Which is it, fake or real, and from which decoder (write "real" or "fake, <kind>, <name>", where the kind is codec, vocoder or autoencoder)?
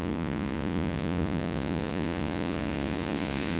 fake, vocoder, Vocos